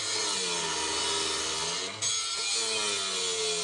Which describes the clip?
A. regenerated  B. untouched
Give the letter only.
B